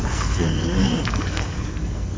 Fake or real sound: fake